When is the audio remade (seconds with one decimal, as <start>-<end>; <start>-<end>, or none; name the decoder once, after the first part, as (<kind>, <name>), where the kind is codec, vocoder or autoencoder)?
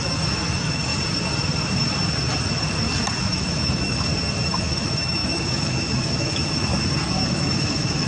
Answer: 0.0-0.9 (autoencoder, DAC-VAE); 3.2-4.1; 4.6-6.7; 7.3-8.1